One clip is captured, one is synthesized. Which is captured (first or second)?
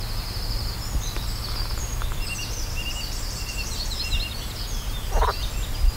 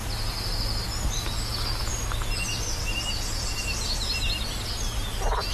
second